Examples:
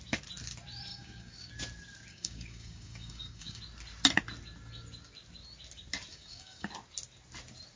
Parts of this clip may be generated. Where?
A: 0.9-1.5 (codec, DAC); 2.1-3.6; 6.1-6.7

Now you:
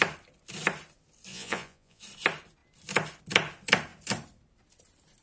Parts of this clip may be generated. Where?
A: 1.3-2.0 (vocoder, Vocos)

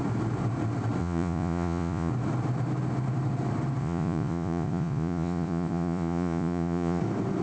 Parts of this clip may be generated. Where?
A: 1.0-2.1 (vocoder, Vocos); 3.8-7.0

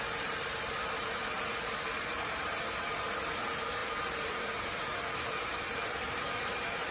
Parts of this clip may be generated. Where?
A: 0.0-6.9 (vocoder, BigVGAN v2)